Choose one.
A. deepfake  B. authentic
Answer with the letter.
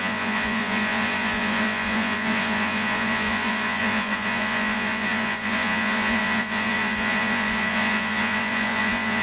A